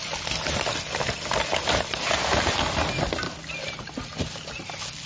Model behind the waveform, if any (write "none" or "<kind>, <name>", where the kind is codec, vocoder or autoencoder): none